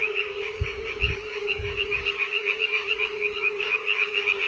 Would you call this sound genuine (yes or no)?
no